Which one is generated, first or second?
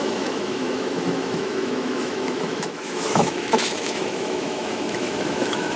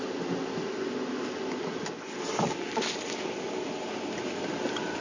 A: first